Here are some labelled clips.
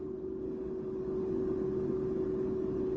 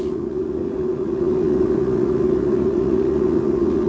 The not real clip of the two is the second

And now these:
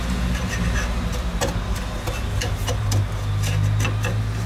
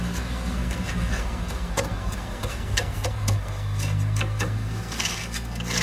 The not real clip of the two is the second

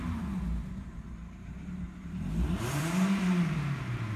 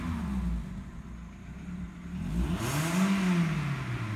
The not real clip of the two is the first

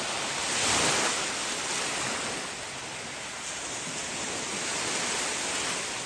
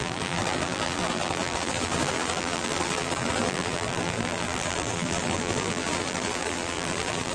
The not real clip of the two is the second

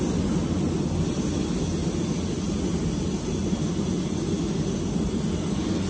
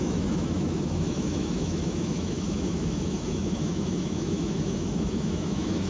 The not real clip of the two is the second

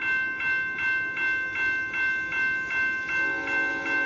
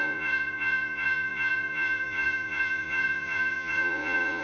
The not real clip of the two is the second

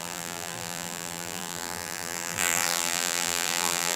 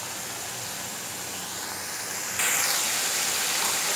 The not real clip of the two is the first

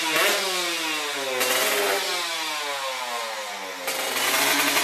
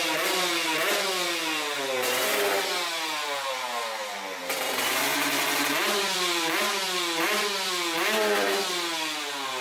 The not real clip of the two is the second